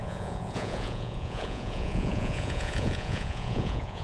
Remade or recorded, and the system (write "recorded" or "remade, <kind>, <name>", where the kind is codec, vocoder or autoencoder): remade, vocoder, Vocos